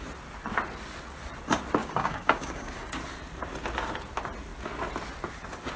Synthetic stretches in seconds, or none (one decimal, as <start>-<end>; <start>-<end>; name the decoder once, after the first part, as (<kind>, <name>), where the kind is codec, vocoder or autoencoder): 1.8-3.0 (codec, DAC)